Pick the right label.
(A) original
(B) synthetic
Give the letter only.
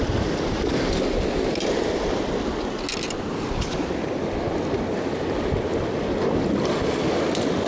A